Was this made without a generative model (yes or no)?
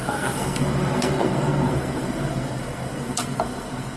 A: no